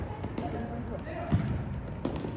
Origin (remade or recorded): recorded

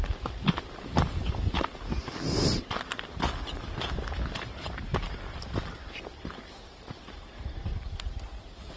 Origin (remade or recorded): recorded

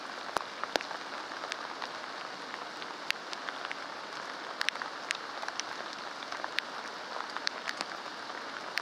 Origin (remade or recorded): recorded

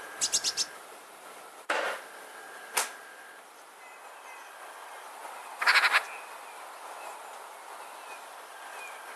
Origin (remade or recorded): recorded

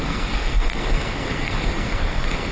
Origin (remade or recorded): remade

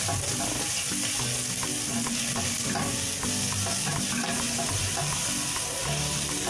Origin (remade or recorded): recorded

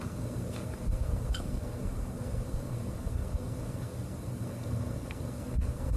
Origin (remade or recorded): remade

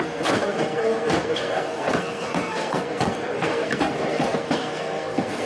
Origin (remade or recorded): remade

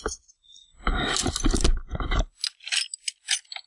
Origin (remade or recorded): recorded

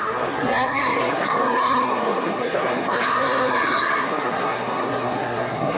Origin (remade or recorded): remade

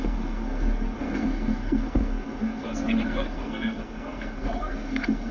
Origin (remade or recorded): remade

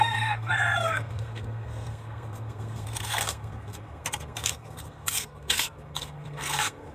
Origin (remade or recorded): remade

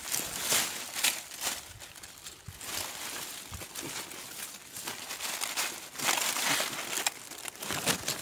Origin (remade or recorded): recorded